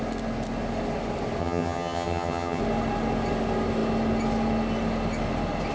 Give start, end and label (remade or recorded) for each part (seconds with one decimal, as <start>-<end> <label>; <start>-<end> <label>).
0.0-1.4 recorded; 1.4-2.6 remade; 2.6-5.7 recorded